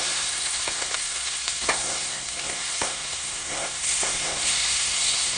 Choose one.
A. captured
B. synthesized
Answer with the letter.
B